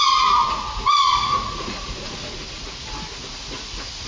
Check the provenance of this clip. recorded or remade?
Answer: remade